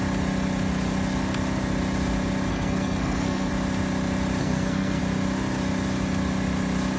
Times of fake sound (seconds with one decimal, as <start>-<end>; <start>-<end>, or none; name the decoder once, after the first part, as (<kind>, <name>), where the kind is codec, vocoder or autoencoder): 2.5-3.5 (codec, SNAC); 4.4-5.0